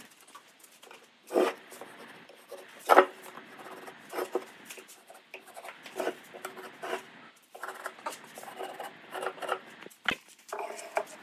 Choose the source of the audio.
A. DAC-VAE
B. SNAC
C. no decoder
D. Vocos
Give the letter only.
C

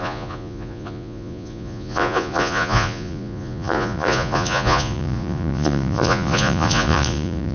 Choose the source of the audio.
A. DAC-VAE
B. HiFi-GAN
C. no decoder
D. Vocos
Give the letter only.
D